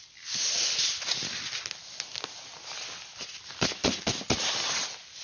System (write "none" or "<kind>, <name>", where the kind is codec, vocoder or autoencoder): none